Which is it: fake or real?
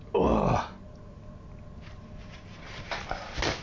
real